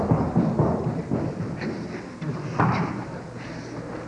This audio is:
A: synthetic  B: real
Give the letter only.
B